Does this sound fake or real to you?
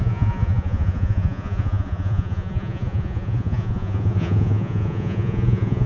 fake